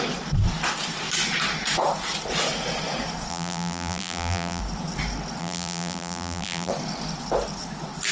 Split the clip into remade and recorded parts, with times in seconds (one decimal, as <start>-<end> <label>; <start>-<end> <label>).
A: 0.0-3.3 recorded; 3.3-4.6 remade; 4.6-5.4 recorded; 5.4-6.7 remade; 6.7-8.1 recorded